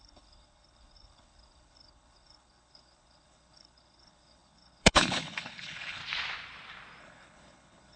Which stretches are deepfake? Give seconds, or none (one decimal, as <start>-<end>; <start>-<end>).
0.0-6.0; 7.0-8.0